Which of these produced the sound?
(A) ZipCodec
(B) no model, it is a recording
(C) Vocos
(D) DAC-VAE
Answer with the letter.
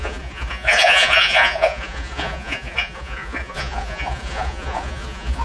C